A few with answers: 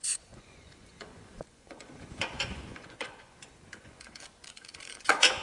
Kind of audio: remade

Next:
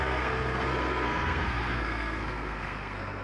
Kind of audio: remade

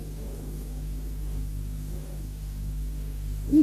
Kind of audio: remade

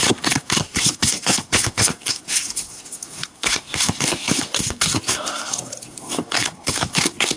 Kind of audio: remade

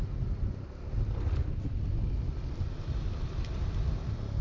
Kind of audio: recorded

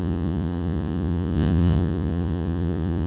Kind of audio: remade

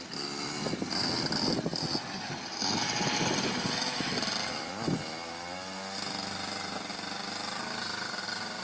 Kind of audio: recorded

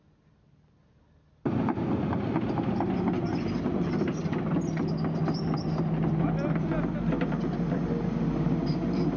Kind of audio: recorded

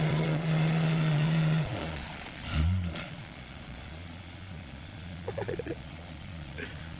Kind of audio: remade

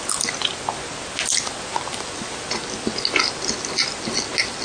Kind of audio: recorded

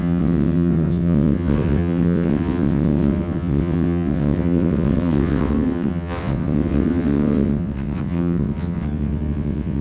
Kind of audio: remade